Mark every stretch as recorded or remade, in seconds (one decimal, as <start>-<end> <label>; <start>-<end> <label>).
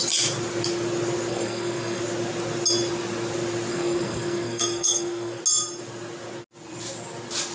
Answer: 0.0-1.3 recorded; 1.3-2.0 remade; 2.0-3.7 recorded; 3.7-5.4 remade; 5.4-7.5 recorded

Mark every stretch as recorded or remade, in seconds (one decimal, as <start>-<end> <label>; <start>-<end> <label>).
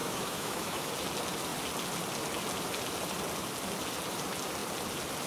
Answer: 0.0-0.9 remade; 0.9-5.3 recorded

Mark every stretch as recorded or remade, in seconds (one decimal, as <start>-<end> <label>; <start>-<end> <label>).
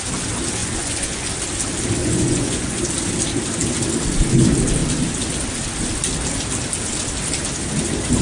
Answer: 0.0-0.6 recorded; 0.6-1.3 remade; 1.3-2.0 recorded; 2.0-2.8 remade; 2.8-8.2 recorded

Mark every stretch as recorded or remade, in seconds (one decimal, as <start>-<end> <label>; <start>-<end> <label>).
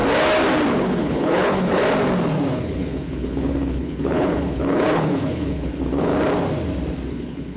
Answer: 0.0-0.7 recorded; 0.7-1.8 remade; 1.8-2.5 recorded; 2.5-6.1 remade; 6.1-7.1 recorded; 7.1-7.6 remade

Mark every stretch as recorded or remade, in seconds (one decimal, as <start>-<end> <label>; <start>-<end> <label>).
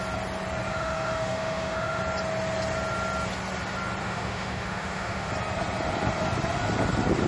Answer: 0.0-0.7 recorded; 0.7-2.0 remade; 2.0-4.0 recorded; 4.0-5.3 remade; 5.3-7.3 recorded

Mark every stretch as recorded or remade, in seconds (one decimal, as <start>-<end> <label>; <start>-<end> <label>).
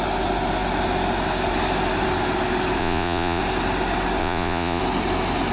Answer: 0.0-2.8 recorded; 2.8-3.4 remade; 3.4-4.2 recorded; 4.2-4.8 remade; 4.8-5.5 recorded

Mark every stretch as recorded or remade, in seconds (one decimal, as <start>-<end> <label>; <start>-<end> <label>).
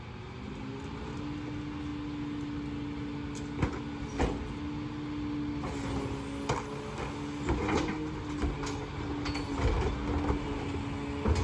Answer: 0.0-11.4 recorded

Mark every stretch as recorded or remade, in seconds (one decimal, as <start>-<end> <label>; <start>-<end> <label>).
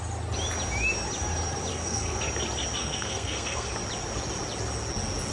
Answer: 0.0-1.7 recorded; 1.7-2.2 remade; 2.2-2.8 recorded; 2.8-3.7 remade; 3.7-5.3 recorded